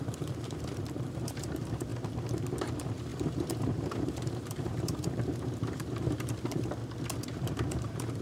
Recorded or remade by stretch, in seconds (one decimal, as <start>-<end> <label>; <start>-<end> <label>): 0.0-1.9 remade; 1.9-2.6 recorded; 2.6-6.8 remade; 6.8-7.7 recorded; 7.7-8.2 remade